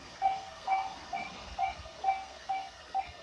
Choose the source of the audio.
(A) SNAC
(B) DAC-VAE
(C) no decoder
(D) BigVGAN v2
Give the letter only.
A